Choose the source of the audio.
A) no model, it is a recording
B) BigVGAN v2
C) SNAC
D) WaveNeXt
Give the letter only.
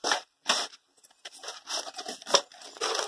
A